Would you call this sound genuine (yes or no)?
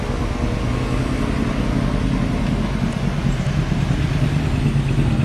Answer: yes